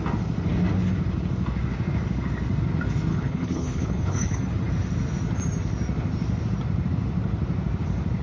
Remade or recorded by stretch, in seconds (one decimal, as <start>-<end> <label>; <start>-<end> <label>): 0.0-3.1 recorded; 3.1-4.4 remade; 4.4-8.2 recorded